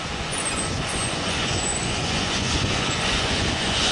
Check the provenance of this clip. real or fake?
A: fake